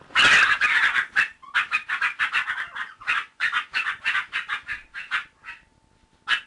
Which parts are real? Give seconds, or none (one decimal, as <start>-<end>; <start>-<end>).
0.0-2.8; 4.1-6.5